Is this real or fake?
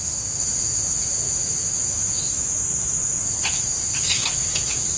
fake